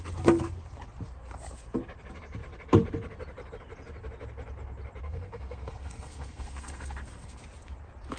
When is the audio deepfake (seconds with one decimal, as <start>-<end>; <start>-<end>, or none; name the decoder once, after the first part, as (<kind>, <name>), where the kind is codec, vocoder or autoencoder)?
5.0-7.4 (codec, SNAC)